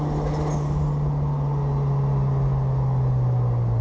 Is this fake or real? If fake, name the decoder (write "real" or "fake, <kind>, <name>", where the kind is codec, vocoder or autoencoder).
real